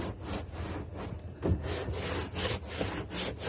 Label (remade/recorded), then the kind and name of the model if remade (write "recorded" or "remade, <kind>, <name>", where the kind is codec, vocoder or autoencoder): recorded